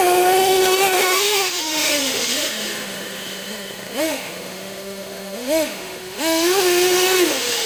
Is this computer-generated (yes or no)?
yes